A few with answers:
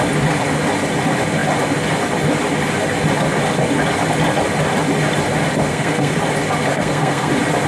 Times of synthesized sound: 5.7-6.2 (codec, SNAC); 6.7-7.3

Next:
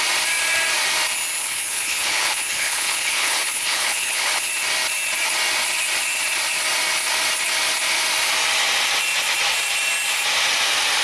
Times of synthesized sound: 1.4-4.5 (codec, HILCodec)

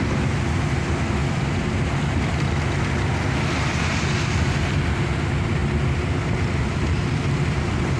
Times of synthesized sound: none

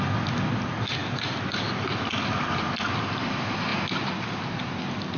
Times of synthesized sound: none

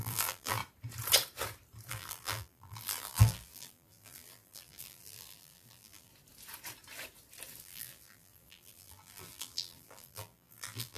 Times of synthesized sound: 0.0-0.6 (vocoder, BigVGAN v2); 1.9-6.1; 7.6-11.0

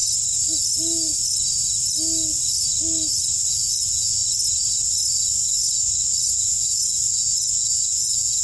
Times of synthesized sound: 3.5-4.2 (vocoder, Vocos); 6.3-8.4

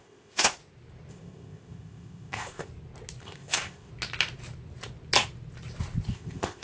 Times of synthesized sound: 0.0-0.6 (codec, ZipCodec); 1.1-2.7; 3.2-3.9; 6.1-6.6

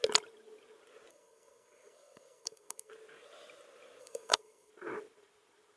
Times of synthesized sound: 1.1-2.9 (codec, SNAC); 4.0-4.7